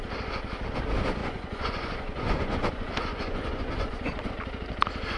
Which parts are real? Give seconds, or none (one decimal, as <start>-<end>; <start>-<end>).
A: 0.0-1.2; 4.3-5.2